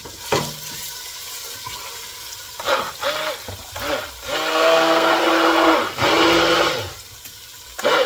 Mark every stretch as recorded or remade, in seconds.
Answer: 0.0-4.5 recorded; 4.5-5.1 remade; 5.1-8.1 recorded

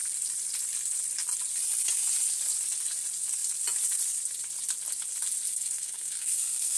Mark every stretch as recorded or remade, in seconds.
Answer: 0.0-5.5 recorded; 5.5-6.8 remade

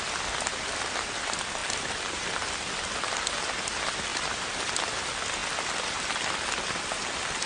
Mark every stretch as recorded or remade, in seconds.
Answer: 0.0-1.6 recorded; 1.6-2.4 remade; 2.4-4.1 recorded; 4.1-4.7 remade; 4.7-7.5 recorded